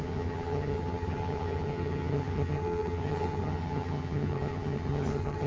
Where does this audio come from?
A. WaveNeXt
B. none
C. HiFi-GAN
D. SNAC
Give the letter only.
C